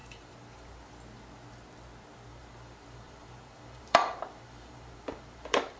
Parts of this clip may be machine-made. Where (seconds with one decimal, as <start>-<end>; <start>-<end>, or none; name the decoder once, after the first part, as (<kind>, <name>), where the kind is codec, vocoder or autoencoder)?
0.0-0.9 (vocoder, BigVGAN v2); 2.3-5.8